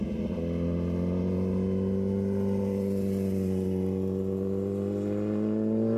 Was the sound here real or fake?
real